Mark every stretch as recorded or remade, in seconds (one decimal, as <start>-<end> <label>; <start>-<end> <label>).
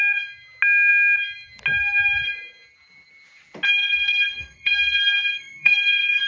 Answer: 0.0-3.8 recorded; 3.8-6.3 remade